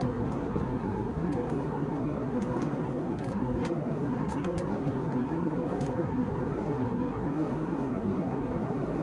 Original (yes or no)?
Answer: no